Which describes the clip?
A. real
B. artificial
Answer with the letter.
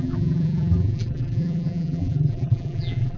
B